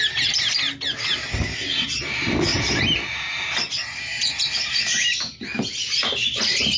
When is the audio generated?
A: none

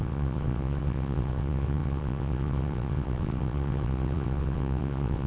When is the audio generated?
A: 0.0-5.3 (vocoder, WaveNeXt)

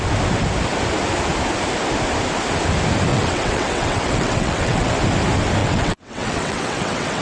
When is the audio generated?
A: 3.1-4.9 (vocoder, WaveNeXt); 5.6-7.2

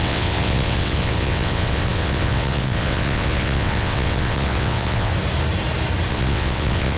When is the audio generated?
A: 0.0-5.1 (vocoder, WaveNeXt); 6.1-7.0

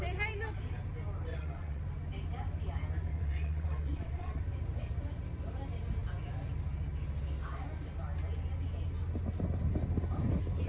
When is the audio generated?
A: 1.3-1.8 (vocoder, WaveNeXt); 3.1-4.4

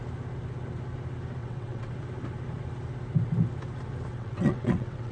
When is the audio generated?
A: 1.4-1.9 (vocoder, WaveNeXt); 4.1-5.1

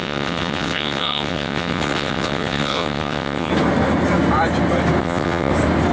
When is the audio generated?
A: 0.0-3.5 (vocoder, WaveNeXt); 5.0-5.5

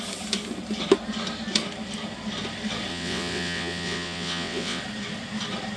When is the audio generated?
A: 2.9-4.8 (vocoder, WaveNeXt)